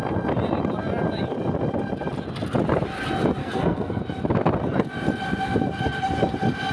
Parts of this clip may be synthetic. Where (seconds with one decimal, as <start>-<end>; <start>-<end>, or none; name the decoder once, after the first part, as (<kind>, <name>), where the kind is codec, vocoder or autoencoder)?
3.4-4.0 (codec, SNAC)